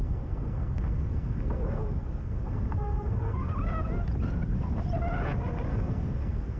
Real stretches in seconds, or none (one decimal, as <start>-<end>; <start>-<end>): 3.5-5.7